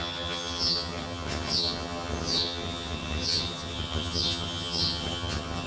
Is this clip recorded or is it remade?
remade